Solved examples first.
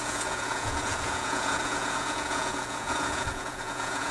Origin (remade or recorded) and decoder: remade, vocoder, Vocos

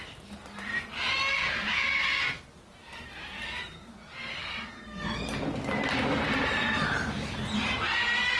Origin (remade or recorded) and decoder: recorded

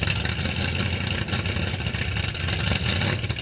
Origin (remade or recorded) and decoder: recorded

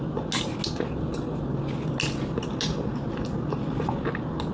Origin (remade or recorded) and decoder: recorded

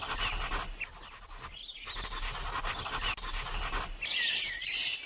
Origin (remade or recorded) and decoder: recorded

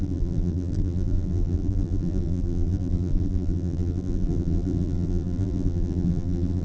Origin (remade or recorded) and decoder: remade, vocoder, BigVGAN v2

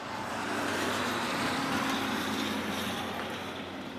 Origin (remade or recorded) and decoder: remade, vocoder, BigVGAN v2